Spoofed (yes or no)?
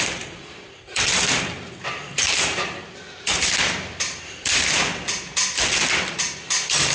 yes